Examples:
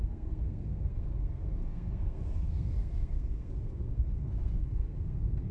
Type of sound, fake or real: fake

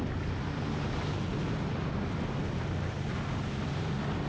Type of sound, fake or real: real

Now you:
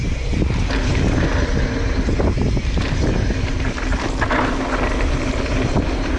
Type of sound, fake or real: real